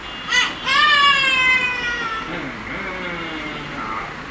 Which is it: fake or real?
real